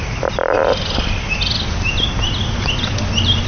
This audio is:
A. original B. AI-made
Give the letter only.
A